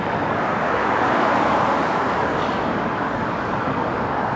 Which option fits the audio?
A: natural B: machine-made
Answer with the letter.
B